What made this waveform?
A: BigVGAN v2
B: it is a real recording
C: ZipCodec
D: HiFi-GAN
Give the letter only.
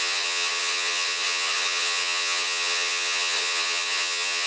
D